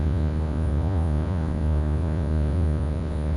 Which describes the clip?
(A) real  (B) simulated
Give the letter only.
B